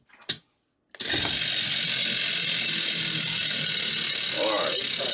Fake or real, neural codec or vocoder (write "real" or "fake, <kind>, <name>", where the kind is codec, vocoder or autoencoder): real